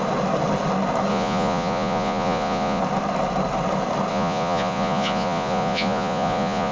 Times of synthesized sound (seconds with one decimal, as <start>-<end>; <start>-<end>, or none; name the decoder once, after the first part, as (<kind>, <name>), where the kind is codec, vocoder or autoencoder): 1.1-2.8 (vocoder, Vocos); 4.1-6.7